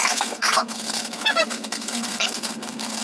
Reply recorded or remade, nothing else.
remade